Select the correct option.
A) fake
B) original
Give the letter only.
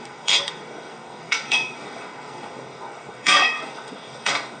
A